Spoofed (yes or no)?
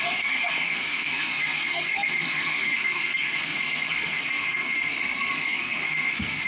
yes